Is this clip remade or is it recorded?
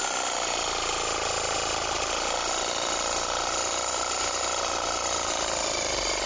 recorded